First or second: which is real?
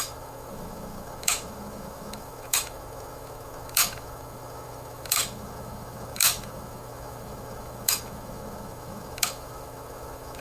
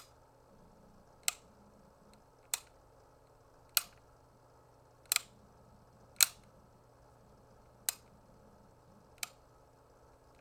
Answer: second